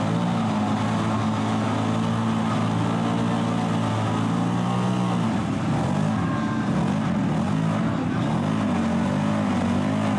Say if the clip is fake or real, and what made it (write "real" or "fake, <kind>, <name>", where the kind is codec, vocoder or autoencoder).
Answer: real